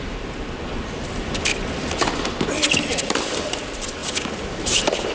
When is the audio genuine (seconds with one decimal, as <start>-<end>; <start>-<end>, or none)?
1.5-2.9; 4.0-4.5

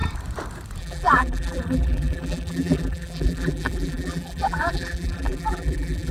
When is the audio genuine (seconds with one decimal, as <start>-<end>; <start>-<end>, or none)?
0.0-0.8

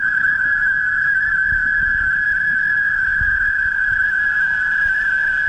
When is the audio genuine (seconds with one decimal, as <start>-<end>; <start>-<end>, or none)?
0.0-5.5

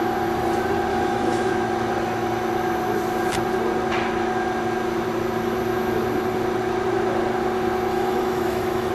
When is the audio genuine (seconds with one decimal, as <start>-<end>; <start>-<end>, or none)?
0.0-0.9; 1.5-7.9

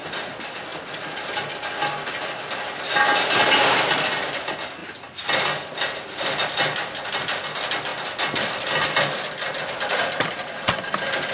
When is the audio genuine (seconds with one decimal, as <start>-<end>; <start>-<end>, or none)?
0.0-11.3